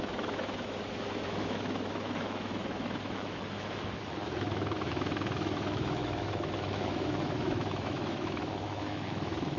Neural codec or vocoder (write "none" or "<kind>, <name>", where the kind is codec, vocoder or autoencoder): autoencoder, DAC-VAE